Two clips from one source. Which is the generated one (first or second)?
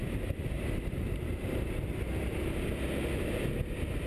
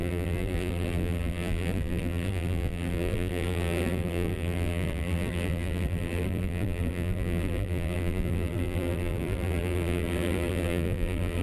second